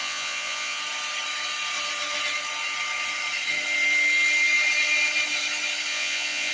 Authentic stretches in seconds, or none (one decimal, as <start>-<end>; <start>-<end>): 0.8-5.9